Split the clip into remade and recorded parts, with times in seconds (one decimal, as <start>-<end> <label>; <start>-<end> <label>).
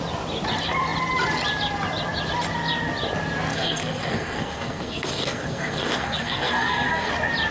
0.0-3.5 recorded; 3.5-7.1 remade; 7.1-7.5 recorded